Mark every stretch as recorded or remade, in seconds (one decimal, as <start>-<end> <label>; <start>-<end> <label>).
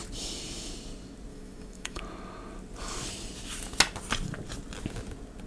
0.0-1.3 recorded; 1.3-2.0 remade; 2.0-5.5 recorded